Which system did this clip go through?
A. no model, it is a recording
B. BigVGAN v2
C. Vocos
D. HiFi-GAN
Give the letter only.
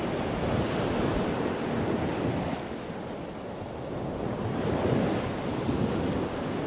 A